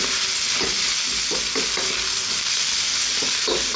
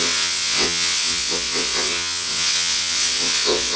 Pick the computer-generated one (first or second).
second